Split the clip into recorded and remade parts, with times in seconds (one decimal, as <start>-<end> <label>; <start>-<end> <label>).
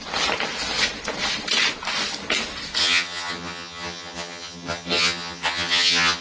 0.0-2.8 recorded; 2.8-6.2 remade